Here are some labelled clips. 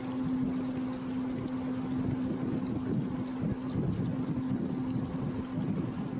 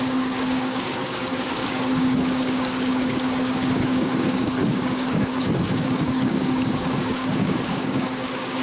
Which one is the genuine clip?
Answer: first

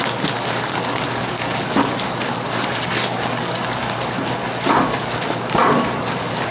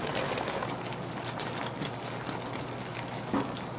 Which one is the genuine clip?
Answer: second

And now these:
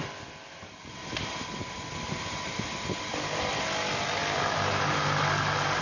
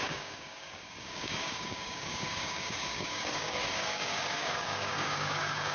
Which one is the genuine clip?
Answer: first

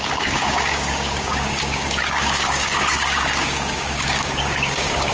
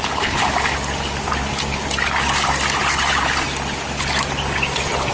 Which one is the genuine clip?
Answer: second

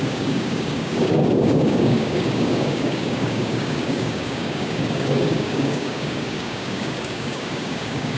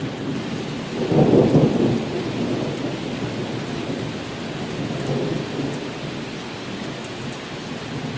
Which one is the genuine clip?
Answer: second